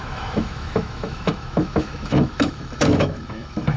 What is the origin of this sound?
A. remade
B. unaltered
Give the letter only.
A